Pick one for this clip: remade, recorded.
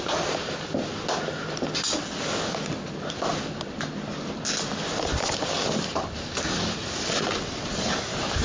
recorded